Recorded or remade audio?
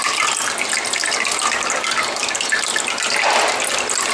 recorded